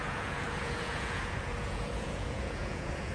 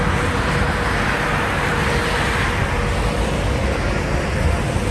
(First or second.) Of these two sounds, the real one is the second